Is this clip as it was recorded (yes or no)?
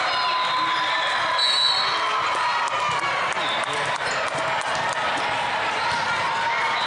yes